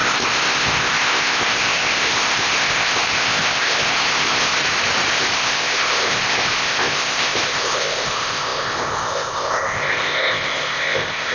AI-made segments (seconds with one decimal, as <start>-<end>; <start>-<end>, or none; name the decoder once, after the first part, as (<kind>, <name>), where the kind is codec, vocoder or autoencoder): 0.0-4.6 (codec, ZipCodec); 5.1-11.3